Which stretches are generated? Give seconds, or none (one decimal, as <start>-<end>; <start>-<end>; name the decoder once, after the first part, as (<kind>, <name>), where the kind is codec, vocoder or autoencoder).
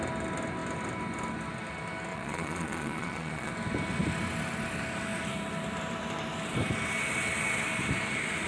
2.1-3.5 (vocoder, Vocos)